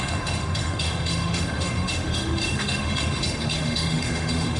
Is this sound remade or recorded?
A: remade